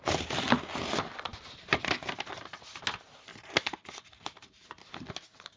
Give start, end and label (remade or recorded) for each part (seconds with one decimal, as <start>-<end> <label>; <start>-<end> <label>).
0.0-5.6 recorded